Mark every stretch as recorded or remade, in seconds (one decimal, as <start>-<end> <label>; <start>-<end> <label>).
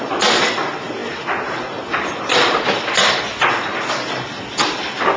0.0-5.2 recorded